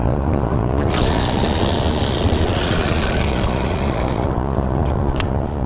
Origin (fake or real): fake